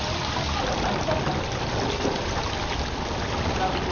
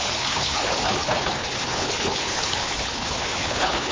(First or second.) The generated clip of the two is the second